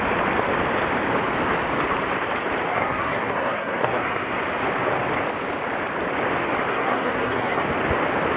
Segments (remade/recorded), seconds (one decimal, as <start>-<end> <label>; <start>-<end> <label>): 0.0-2.7 recorded; 2.7-4.4 remade; 4.4-6.7 recorded; 6.7-7.6 remade; 7.6-8.4 recorded